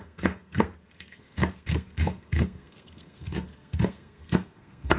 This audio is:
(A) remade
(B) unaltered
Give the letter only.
A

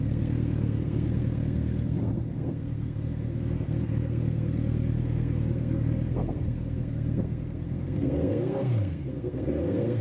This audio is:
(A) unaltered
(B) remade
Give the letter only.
B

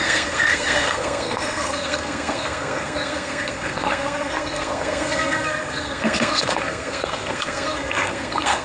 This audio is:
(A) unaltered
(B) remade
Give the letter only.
B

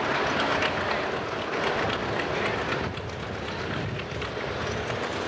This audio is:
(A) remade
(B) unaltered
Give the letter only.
B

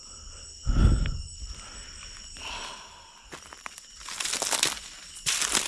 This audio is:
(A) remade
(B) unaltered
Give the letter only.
B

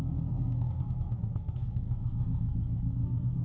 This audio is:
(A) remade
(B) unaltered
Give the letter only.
A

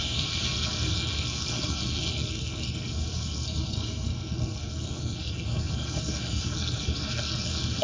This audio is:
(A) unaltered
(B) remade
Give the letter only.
B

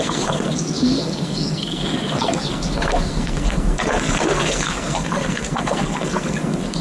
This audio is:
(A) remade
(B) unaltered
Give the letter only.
A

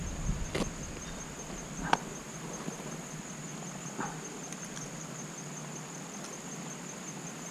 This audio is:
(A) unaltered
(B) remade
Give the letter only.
A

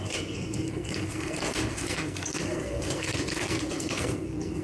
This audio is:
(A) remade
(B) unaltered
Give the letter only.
A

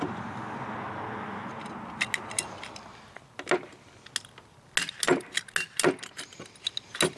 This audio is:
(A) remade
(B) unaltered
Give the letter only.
B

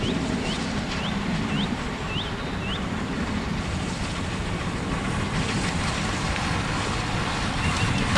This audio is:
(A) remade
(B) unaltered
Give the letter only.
B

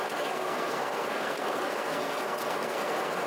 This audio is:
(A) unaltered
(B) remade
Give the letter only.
B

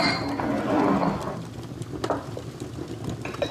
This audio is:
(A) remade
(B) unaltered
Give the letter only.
B